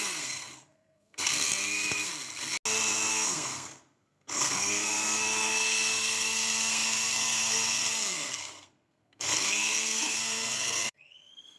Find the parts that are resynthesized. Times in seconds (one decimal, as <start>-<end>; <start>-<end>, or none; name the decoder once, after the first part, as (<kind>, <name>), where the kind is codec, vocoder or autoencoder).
0.0-2.1 (codec, SNAC); 3.1-11.6